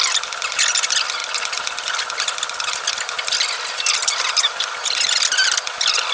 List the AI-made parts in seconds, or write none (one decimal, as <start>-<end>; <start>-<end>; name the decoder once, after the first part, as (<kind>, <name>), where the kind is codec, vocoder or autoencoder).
none